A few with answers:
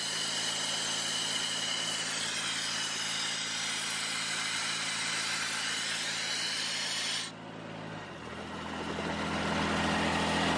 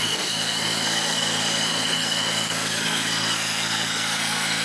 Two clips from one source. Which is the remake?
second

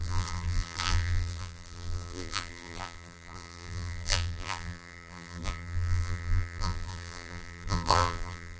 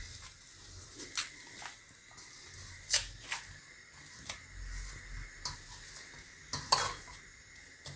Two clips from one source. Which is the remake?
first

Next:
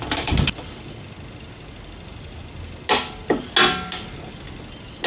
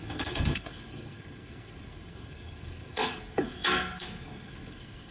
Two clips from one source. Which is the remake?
second